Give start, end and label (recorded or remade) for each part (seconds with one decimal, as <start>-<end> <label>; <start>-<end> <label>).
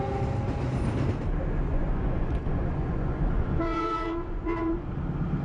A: 0.0-1.7 recorded; 1.7-4.9 remade; 4.9-5.4 recorded